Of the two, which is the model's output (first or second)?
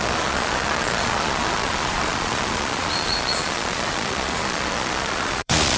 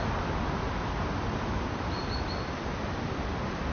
first